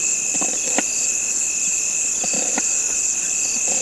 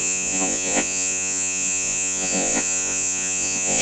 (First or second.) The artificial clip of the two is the second